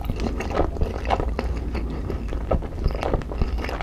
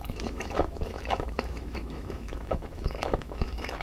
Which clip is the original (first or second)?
first